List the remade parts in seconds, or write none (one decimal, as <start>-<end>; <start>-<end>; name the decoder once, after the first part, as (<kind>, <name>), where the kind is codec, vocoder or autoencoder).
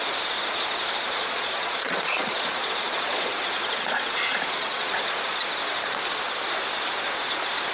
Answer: 1.2-5.4 (vocoder, Vocos)